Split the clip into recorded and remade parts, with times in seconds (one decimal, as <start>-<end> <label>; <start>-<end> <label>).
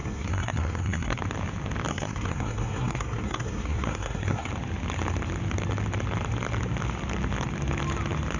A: 0.0-1.2 remade; 1.2-1.9 recorded; 1.9-4.5 remade; 4.5-8.4 recorded